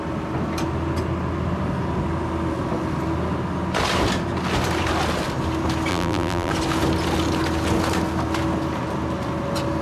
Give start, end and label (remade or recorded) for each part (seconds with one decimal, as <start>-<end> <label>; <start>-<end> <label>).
0.0-5.9 recorded; 5.9-6.5 remade; 6.5-9.8 recorded